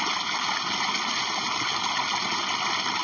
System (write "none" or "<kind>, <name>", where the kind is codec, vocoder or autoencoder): none